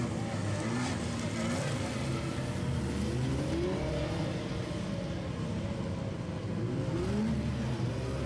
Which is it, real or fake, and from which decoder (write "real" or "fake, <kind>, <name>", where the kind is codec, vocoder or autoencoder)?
real